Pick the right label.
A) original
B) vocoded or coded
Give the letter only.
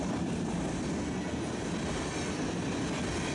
A